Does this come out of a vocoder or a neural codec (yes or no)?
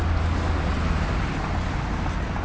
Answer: no